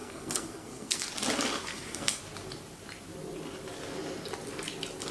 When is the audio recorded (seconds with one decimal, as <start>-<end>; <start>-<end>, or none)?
1.1-1.7; 2.2-5.1